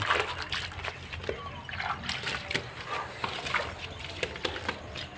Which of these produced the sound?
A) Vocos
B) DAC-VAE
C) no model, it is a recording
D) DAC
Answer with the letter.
C